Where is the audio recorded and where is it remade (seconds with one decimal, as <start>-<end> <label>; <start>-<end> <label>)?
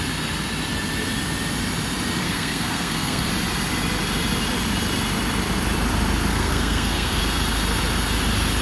0.0-2.2 recorded; 2.2-3.3 remade; 3.3-6.3 recorded; 6.3-7.2 remade; 7.2-8.6 recorded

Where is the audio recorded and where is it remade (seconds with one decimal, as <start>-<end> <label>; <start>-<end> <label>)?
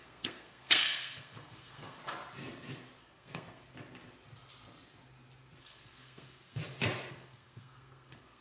0.0-2.0 remade; 2.0-3.0 recorded; 3.0-3.6 remade; 3.6-5.6 recorded; 5.6-6.6 remade; 6.6-7.1 recorded; 7.1-8.4 remade